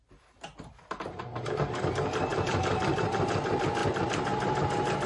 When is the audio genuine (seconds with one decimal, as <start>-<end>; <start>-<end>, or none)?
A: 0.0-5.1